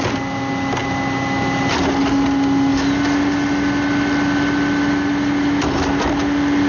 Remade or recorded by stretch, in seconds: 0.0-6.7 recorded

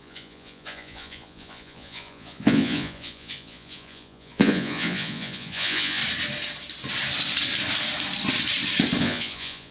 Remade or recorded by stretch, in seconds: 0.0-6.0 remade; 6.0-9.0 recorded; 9.0-9.7 remade

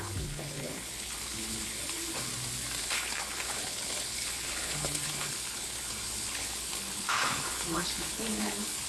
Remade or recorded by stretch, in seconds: 0.0-2.3 remade; 2.3-2.8 recorded; 2.8-8.9 remade

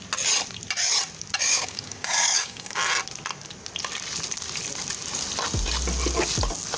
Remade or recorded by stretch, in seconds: 0.0-1.5 recorded; 1.5-2.8 remade; 2.8-6.8 recorded

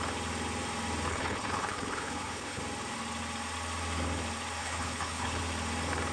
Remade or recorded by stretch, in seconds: 0.0-1.1 recorded; 1.1-2.6 remade; 2.6-4.6 recorded; 4.6-5.4 remade; 5.4-6.1 recorded

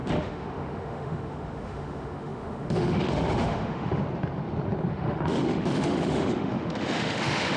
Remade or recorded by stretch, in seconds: 0.0-4.0 remade; 4.0-4.9 recorded; 4.9-7.6 remade

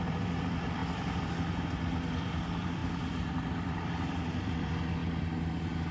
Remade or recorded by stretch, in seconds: 0.0-0.8 remade; 0.8-2.0 recorded; 2.0-2.8 remade; 2.8-3.5 recorded; 3.5-5.0 remade; 5.0-5.9 recorded

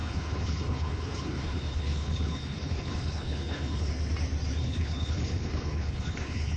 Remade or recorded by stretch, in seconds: 0.0-3.9 remade; 3.9-4.6 recorded; 4.6-6.6 remade